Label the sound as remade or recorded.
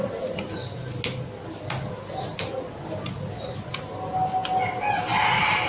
recorded